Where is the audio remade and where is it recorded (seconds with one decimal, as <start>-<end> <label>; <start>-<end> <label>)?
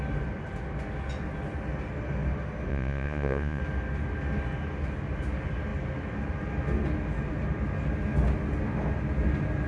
0.0-2.7 recorded; 2.7-3.6 remade; 3.6-9.7 recorded